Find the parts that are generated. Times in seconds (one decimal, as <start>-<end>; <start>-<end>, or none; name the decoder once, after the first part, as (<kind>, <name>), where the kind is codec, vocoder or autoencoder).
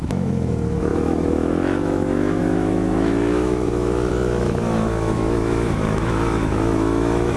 0.0-7.4 (autoencoder, DAC-VAE)